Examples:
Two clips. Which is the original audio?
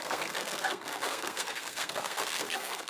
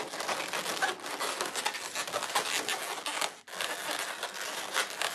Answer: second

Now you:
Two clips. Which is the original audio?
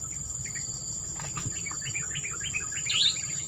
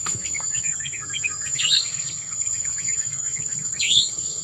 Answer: first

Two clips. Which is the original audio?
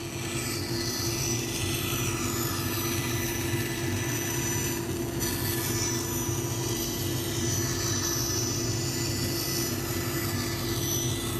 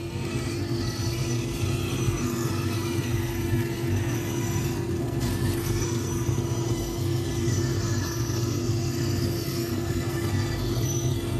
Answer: first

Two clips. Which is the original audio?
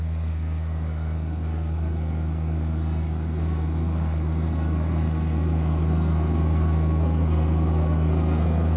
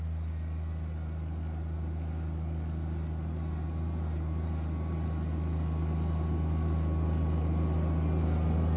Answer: second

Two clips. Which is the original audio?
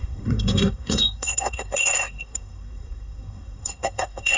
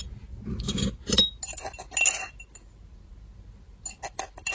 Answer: second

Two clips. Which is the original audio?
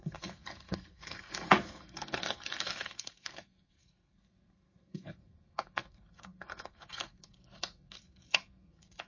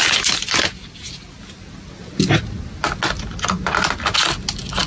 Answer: second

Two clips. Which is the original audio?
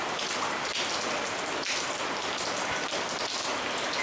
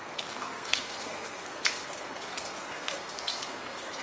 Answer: first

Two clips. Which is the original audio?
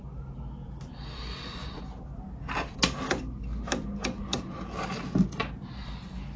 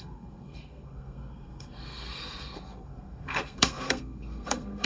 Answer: first